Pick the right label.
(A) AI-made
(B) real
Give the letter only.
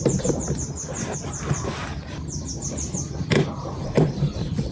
A